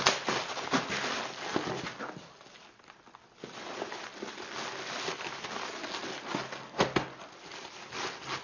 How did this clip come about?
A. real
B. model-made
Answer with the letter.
A